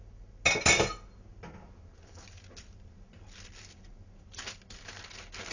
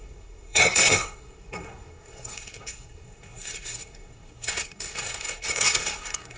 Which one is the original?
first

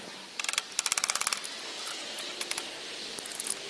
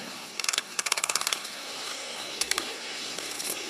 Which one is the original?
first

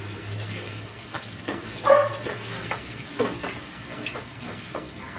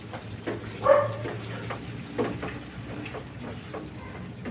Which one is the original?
second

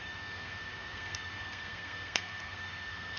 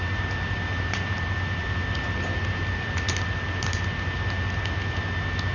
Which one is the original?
second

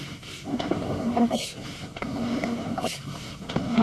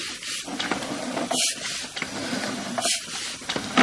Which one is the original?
second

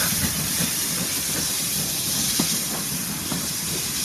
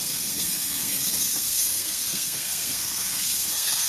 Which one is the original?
first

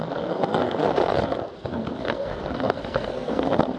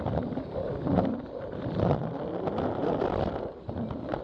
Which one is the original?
second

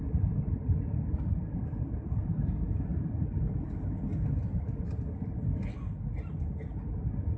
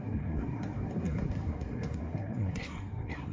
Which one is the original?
first